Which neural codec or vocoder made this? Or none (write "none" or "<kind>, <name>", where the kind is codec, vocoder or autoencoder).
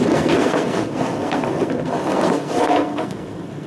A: codec, SNAC